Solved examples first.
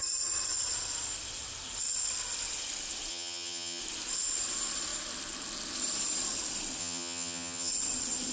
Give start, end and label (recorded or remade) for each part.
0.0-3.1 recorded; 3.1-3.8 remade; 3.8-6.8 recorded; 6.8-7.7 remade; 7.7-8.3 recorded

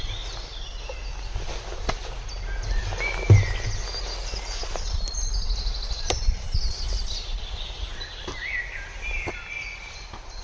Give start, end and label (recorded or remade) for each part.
0.0-10.4 recorded

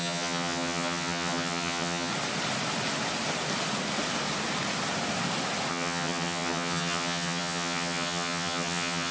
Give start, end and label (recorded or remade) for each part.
0.0-2.1 remade; 2.1-5.7 recorded; 5.7-9.1 remade

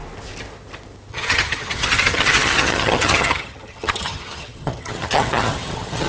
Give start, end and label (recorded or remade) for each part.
0.0-1.1 recorded; 1.1-6.1 remade